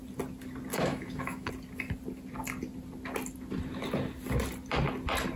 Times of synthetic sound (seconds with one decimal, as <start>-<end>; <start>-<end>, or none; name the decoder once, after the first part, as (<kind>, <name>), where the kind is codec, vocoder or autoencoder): 0.7-1.5 (autoencoder, DAC-VAE)